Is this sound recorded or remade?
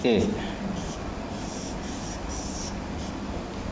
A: recorded